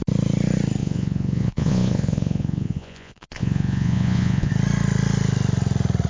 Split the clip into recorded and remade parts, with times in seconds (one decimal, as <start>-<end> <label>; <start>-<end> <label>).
0.0-0.8 recorded; 0.8-4.5 remade; 4.5-6.1 recorded